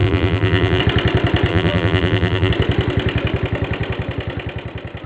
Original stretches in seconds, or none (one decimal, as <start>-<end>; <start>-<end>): 0.8-1.5; 2.5-5.1